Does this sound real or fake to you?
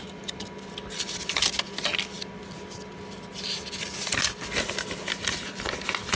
real